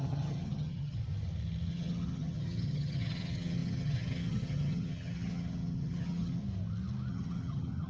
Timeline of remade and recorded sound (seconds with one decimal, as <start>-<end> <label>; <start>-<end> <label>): 0.0-1.0 remade; 1.0-1.7 recorded; 1.7-6.4 remade; 6.4-7.1 recorded; 7.1-7.9 remade